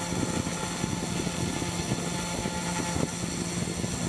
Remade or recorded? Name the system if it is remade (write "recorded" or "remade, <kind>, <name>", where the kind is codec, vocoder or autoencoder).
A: recorded